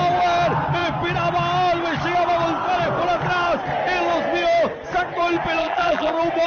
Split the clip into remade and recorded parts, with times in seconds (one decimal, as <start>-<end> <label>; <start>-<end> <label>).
0.0-5.6 recorded; 5.6-6.1 remade; 6.1-6.5 recorded